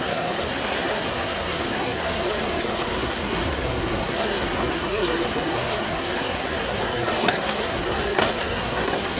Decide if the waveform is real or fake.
fake